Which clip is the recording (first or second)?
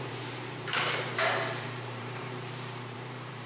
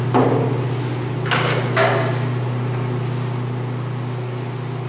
second